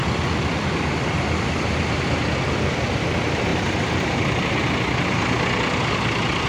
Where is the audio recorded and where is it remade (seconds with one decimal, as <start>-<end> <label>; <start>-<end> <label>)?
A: 0.0-3.5 recorded; 3.5-4.2 remade; 4.2-6.5 recorded